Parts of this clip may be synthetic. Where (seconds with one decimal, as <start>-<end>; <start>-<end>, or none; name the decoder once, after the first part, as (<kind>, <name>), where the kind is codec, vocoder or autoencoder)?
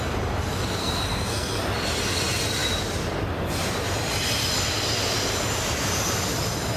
0.8-1.6 (codec, SNAC)